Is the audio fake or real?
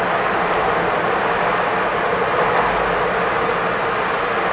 real